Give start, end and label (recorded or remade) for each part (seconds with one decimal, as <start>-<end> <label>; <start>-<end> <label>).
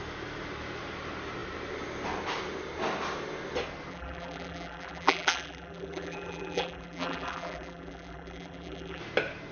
0.0-3.9 recorded; 3.9-9.0 remade; 9.0-9.5 recorded